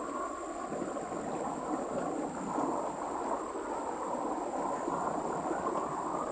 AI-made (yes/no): no